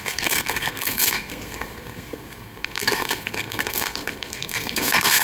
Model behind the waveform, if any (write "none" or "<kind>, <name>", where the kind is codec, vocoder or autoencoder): codec, SNAC